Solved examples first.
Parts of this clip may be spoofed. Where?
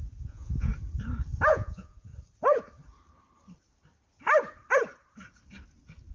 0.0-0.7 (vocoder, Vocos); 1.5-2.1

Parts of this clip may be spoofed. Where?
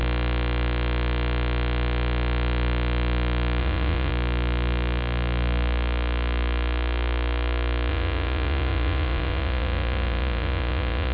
3.6-4.1 (vocoder, Vocos); 7.9-11.1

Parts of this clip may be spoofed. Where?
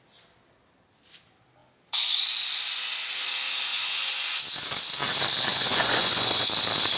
3.7-4.4 (vocoder, Vocos); 5.5-6.5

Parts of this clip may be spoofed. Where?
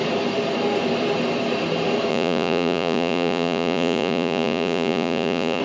2.1-5.6 (vocoder, Vocos)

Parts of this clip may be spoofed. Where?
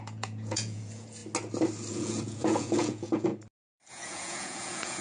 0.0-1.2 (vocoder, Vocos); 1.9-3.3; 3.9-5.0